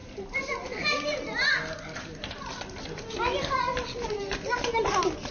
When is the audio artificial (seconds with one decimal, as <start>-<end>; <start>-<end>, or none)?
none